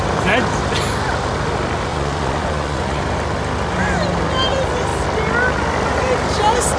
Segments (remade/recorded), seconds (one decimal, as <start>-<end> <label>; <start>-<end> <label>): 0.0-1.9 recorded; 1.9-3.0 remade; 3.0-6.8 recorded